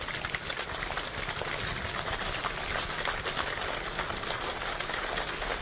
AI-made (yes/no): no